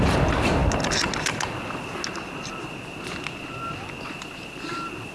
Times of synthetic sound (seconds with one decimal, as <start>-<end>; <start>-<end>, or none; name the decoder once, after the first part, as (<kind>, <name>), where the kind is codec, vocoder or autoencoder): none